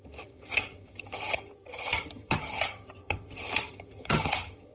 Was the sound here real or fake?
fake